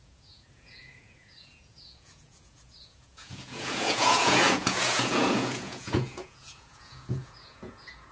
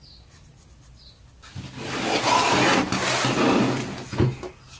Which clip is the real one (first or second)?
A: second